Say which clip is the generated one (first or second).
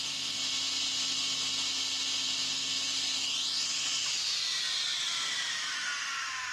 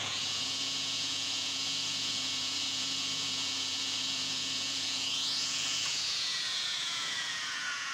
second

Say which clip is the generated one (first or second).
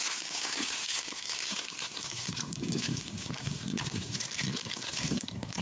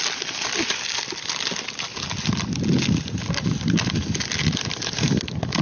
first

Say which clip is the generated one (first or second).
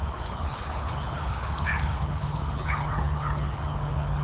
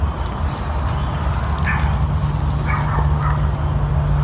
first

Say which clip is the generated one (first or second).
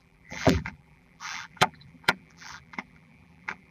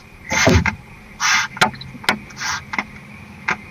first